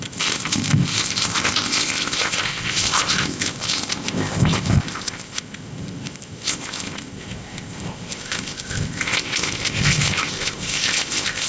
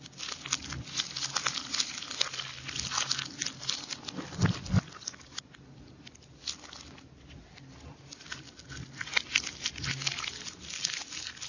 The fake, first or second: first